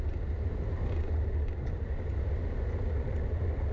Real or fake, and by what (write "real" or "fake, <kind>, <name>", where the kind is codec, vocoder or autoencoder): real